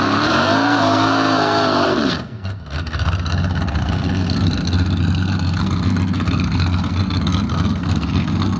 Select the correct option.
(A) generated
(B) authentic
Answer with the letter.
A